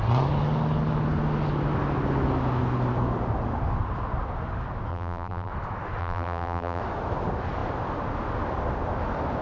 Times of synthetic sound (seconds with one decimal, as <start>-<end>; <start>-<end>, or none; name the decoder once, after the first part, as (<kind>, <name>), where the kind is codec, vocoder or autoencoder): 4.9-5.5 (vocoder, BigVGAN v2); 6.0-6.8